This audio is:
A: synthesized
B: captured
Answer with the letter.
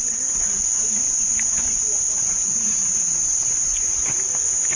B